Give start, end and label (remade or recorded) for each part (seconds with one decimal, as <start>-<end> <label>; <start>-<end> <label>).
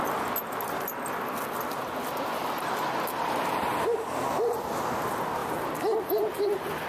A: 0.0-6.9 recorded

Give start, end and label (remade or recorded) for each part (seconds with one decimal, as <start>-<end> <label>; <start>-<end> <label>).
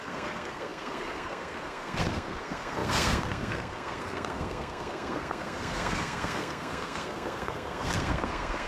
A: 0.0-8.7 remade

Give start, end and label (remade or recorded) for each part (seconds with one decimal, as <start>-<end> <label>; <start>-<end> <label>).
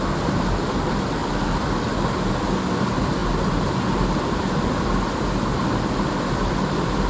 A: 0.0-7.1 recorded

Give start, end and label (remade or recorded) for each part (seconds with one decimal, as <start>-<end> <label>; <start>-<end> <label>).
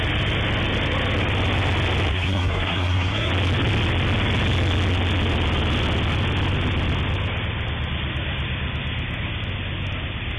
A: 0.0-2.1 recorded; 2.1-3.3 remade; 3.3-10.4 recorded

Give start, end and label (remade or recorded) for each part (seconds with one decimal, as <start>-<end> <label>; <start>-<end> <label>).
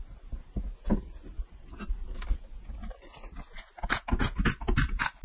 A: 0.0-5.2 recorded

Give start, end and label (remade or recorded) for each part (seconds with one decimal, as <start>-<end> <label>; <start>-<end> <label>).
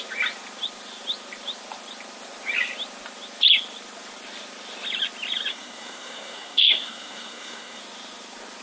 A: 0.0-5.5 recorded; 5.5-7.8 remade; 7.8-8.6 recorded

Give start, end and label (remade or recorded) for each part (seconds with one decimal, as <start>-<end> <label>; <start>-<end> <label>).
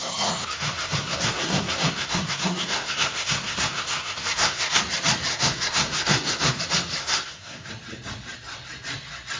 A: 0.0-4.8 remade; 4.8-5.3 recorded; 5.3-6.6 remade; 6.6-7.0 recorded; 7.0-7.7 remade; 7.7-9.4 recorded